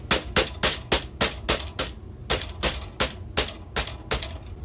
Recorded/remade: recorded